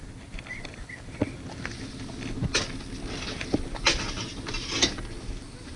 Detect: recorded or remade recorded